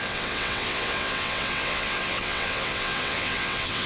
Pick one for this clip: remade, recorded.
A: remade